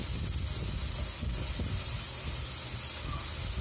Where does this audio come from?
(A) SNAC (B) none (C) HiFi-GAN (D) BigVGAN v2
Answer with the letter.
B